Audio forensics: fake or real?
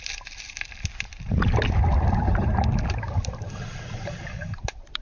fake